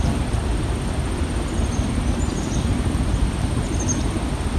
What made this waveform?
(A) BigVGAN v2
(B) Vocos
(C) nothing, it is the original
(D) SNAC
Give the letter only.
C